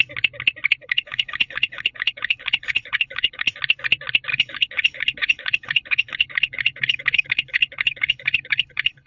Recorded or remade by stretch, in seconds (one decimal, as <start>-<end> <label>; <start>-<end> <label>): 0.0-0.8 recorded; 0.8-3.5 remade; 3.5-4.3 recorded; 4.3-9.1 remade